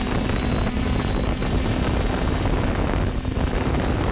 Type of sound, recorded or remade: recorded